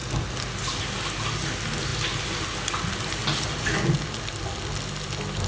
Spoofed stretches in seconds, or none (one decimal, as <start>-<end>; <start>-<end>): none